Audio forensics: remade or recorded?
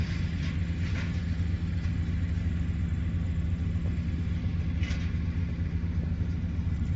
recorded